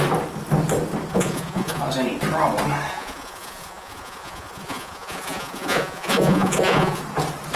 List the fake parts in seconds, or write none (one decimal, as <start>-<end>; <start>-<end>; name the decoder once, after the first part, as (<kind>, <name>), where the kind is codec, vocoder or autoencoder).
1.1-1.8 (vocoder, Vocos); 2.9-7.0